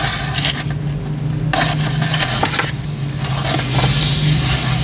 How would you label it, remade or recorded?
recorded